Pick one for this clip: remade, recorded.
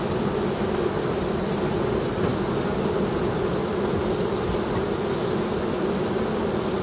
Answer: recorded